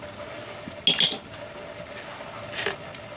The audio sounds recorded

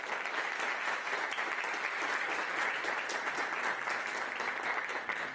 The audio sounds recorded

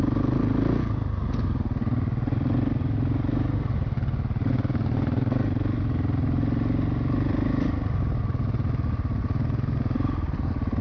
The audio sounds recorded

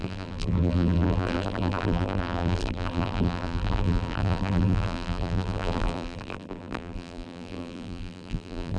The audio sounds remade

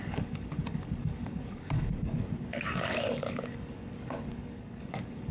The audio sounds remade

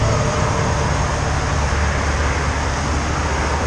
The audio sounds recorded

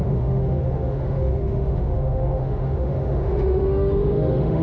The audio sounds remade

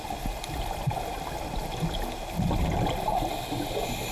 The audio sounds recorded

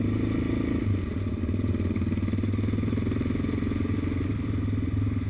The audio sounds recorded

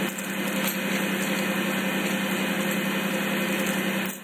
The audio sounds recorded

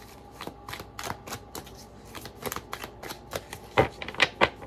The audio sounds recorded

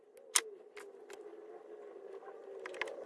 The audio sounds recorded